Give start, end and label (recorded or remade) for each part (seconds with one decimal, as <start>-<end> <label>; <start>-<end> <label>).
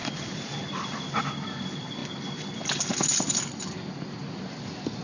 0.0-5.0 recorded